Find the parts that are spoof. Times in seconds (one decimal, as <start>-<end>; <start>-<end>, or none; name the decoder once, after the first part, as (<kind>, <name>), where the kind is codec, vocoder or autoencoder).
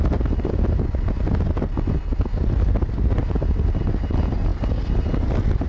none